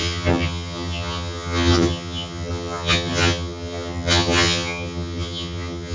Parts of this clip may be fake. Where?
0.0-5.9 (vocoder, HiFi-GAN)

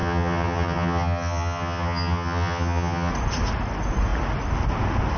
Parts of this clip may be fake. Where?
0.0-3.1 (vocoder, HiFi-GAN)

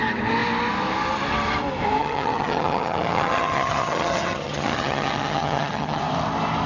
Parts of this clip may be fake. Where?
2.0-6.0 (vocoder, HiFi-GAN)